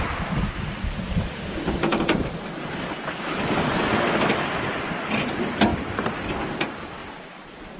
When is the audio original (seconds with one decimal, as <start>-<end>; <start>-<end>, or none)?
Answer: 0.0-1.9; 2.9-5.7; 6.3-7.0